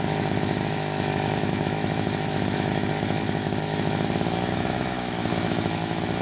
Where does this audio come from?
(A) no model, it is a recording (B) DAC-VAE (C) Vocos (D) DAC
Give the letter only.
B